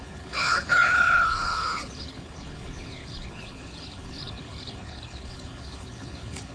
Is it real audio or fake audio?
fake